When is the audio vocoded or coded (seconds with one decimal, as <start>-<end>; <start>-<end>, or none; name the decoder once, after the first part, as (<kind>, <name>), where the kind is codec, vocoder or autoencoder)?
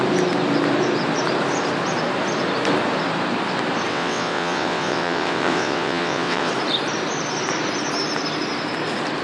3.9-6.5 (vocoder, WaveNeXt)